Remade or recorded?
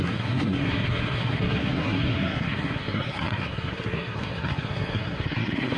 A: remade